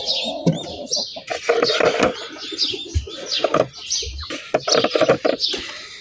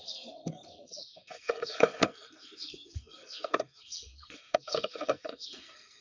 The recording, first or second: first